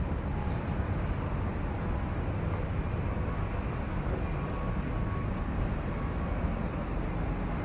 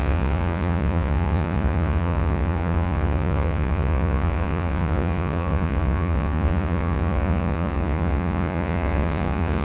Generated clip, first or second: second